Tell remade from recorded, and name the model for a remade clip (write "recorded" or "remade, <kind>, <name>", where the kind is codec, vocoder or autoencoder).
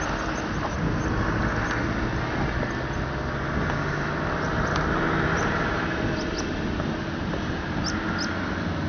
recorded